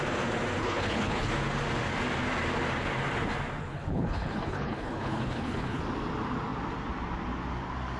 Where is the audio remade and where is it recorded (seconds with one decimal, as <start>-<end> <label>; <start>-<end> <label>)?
0.0-0.6 recorded; 0.6-1.3 remade; 1.3-3.6 recorded; 3.6-5.8 remade; 5.8-8.0 recorded